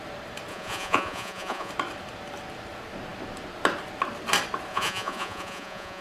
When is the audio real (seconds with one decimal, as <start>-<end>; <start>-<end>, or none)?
0.0-0.5; 1.7-4.7